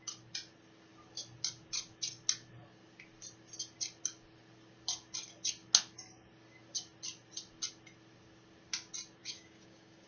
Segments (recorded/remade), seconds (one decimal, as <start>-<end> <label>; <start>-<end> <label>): 0.0-9.2 recorded; 9.2-10.1 remade